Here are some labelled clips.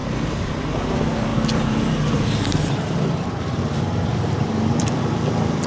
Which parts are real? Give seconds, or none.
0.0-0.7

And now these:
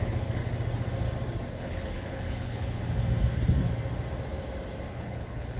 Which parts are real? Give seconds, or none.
0.4-1.5; 2.8-4.9

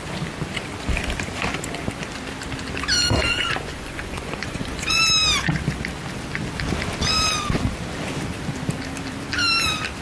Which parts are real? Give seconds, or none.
0.0-3.2; 5.0-10.0

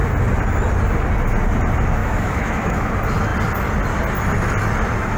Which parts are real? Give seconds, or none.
0.0-2.0; 2.9-5.2

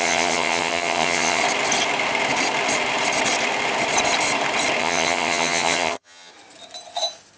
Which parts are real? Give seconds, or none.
1.4-4.8; 6.3-7.4

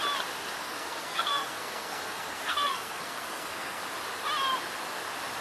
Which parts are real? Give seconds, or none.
0.0-0.6; 3.8-5.4